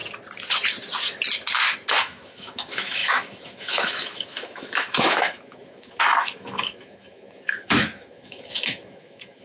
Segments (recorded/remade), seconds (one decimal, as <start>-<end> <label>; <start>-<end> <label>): 0.0-2.0 recorded; 2.0-9.4 remade